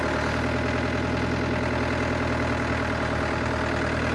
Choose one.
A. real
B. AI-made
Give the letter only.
A